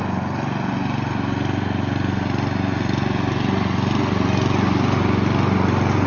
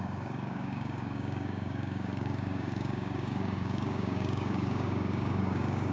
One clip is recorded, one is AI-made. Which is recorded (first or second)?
first